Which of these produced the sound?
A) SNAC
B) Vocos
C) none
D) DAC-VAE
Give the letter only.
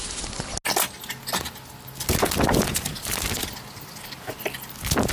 C